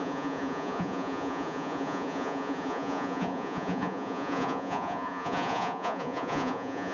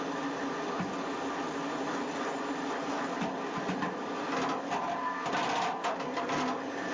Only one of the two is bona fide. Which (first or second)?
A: second